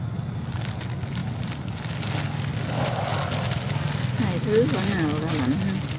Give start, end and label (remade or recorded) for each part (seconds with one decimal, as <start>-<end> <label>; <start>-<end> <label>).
0.0-6.0 recorded